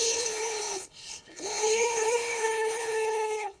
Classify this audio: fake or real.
fake